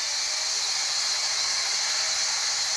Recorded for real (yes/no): yes